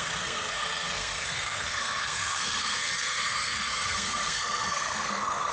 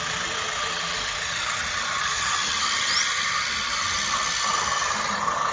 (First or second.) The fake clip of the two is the first